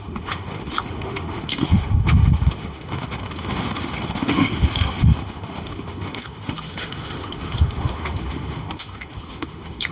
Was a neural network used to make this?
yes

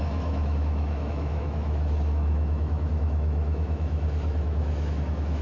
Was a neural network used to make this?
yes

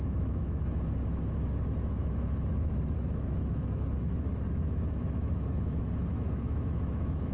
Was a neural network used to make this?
yes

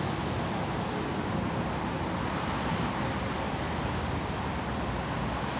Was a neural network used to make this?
no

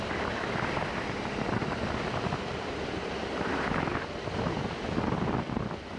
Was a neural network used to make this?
no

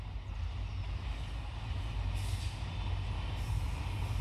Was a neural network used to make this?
no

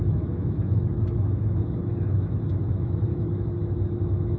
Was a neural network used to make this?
yes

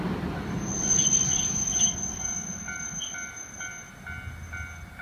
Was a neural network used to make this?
no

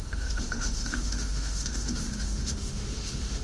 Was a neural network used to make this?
yes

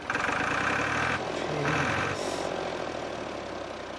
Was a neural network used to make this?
no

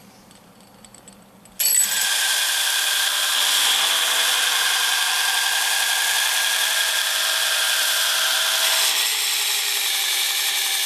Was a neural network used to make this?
no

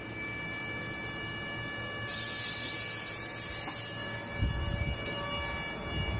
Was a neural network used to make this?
no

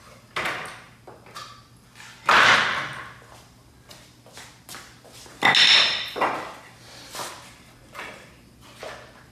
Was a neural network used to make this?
no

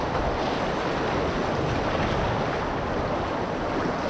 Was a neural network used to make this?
no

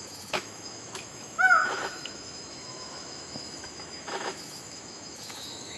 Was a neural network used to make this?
yes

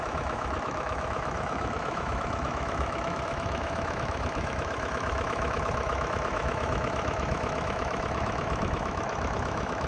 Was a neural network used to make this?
yes